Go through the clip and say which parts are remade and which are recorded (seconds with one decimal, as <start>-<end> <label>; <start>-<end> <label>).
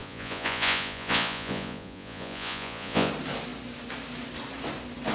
0.0-3.1 remade; 3.1-5.1 recorded